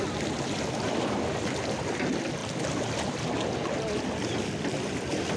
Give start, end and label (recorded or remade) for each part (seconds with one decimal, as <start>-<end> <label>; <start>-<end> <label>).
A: 0.0-5.4 recorded